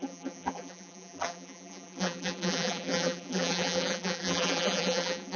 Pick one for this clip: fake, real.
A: fake